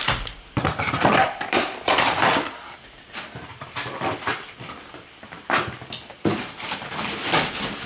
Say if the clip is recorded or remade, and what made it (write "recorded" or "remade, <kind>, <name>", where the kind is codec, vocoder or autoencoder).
remade, vocoder, BigVGAN v2